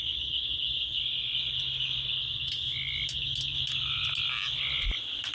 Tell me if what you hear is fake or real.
real